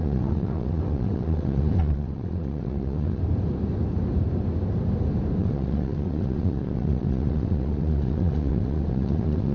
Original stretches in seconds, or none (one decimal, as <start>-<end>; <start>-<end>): 3.2-5.4